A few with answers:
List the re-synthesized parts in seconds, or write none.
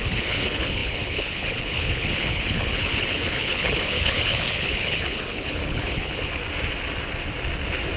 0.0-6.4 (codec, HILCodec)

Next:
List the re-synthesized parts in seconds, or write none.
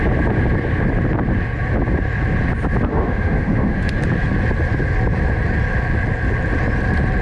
2.9-4.0 (autoencoder, DAC-VAE)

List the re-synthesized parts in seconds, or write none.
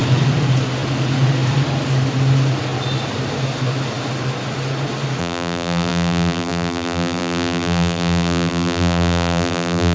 5.2-9.9 (vocoder, BigVGAN v2)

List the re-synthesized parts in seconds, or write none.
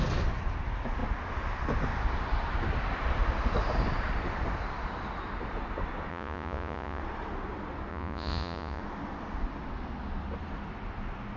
6.1-7.0 (vocoder, Vocos); 7.9-8.8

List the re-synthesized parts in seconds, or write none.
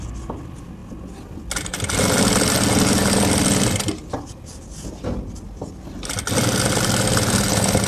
none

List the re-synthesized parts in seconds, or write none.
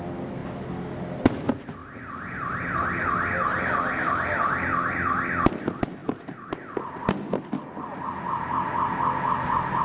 none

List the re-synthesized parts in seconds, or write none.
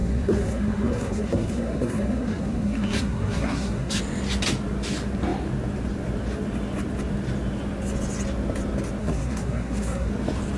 0.0-4.0 (codec, SNAC); 9.0-10.1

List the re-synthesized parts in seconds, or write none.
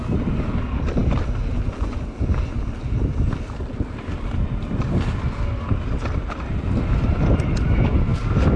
none